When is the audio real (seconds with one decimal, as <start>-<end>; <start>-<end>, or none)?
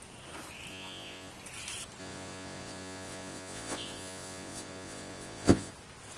0.0-0.7; 1.3-2.0; 5.7-6.2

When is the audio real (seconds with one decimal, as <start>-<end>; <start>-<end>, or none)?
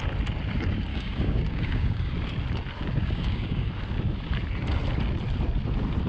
0.0-0.9; 2.1-3.0; 3.7-6.1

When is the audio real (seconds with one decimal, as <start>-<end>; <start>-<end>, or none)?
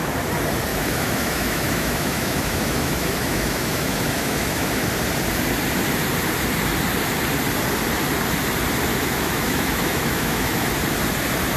0.0-0.7; 4.9-8.9; 10.7-11.6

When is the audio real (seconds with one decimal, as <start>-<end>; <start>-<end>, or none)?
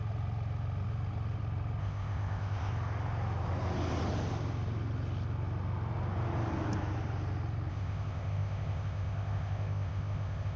0.0-1.8; 2.7-7.7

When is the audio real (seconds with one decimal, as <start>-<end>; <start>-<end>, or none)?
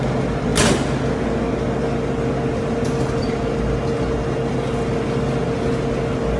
0.0-6.4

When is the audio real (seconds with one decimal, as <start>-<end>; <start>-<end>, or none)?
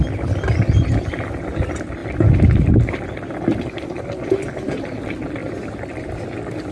0.0-6.7